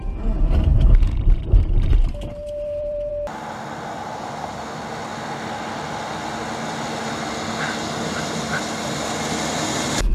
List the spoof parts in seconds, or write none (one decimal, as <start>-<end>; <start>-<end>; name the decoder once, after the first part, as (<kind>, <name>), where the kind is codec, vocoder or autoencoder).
0.7-3.1 (vocoder, BigVGAN v2)